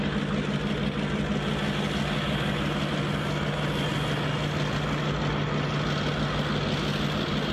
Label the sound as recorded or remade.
recorded